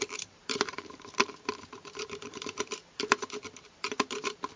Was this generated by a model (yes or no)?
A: yes